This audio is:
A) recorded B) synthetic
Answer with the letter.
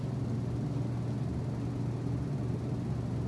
A